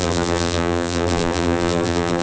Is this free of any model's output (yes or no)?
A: no